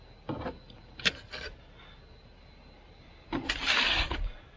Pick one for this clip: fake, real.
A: real